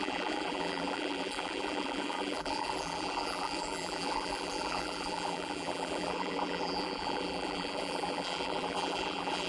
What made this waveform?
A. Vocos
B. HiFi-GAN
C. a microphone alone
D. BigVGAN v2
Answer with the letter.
D